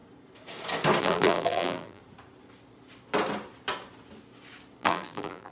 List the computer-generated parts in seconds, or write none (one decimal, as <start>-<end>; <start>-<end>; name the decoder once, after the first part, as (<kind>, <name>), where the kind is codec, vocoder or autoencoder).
1.0-2.0 (vocoder, BigVGAN v2); 4.8-5.5